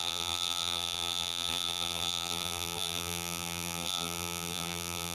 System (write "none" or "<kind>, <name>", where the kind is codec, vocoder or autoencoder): vocoder, BigVGAN v2